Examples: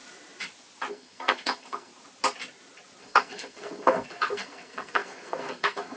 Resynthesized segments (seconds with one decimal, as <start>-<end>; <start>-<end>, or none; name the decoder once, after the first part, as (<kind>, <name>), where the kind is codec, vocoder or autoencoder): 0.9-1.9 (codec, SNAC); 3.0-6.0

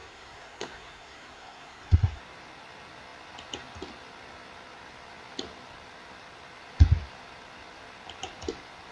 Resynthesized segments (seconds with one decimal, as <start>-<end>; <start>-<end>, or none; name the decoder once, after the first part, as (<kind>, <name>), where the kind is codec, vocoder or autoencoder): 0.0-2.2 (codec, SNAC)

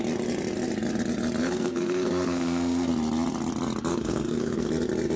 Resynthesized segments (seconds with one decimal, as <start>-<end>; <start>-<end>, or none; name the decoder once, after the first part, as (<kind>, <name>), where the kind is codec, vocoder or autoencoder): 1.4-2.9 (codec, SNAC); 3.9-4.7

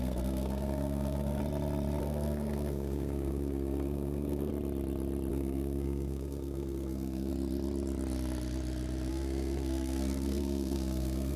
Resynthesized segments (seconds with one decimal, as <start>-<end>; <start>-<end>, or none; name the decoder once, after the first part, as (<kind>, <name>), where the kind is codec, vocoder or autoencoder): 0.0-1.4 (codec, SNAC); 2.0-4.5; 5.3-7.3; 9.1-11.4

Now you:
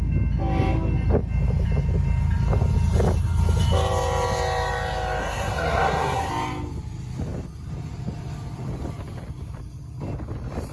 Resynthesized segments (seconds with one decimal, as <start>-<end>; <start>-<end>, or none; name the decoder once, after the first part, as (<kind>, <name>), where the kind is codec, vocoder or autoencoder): 5.2-6.3 (codec, SNAC)

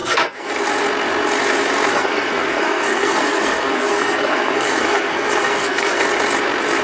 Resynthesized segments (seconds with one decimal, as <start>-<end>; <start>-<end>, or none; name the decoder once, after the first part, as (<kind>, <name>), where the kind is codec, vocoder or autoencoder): 0.0-0.5 (codec, SNAC); 1.9-6.0